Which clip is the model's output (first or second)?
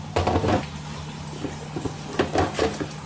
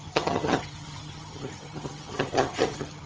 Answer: second